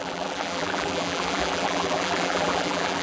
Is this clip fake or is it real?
fake